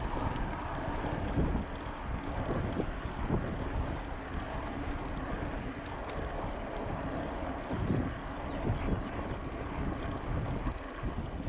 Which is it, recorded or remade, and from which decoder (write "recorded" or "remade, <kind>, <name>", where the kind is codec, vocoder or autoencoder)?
recorded